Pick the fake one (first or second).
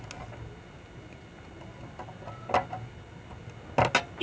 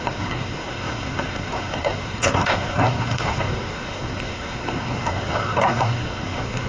second